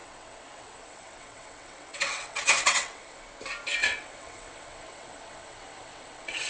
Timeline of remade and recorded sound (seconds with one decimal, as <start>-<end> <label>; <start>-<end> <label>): 0.0-3.2 remade; 3.2-3.8 recorded; 3.8-6.5 remade

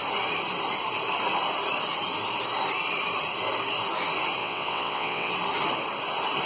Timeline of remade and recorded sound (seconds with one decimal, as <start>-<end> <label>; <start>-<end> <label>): 0.0-4.4 recorded; 4.4-5.3 remade; 5.3-6.5 recorded

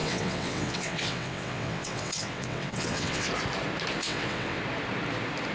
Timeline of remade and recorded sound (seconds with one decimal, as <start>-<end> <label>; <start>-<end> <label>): 0.0-3.3 remade; 3.3-4.0 recorded; 4.0-4.6 remade; 4.6-5.5 recorded

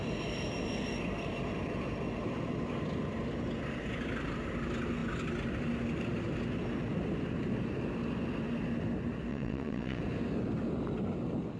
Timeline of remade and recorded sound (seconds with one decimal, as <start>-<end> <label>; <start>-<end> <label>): 0.0-9.3 recorded; 9.3-10.0 remade; 10.0-11.6 recorded

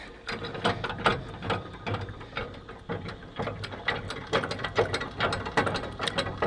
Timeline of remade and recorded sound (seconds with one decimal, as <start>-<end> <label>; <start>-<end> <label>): 0.0-6.5 recorded

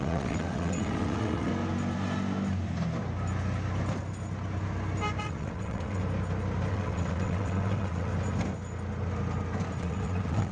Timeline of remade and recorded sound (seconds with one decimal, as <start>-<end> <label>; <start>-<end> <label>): 0.0-1.5 remade; 1.5-5.2 recorded; 5.2-6.0 remade; 6.0-6.7 recorded; 6.7-8.1 remade; 8.1-9.8 recorded; 9.8-10.5 remade

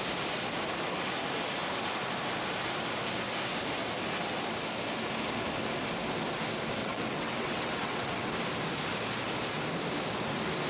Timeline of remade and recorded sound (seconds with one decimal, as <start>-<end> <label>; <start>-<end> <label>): 0.0-6.8 recorded; 6.8-8.3 remade; 8.3-10.7 recorded